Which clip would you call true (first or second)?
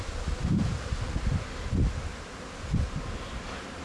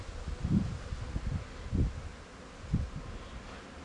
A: second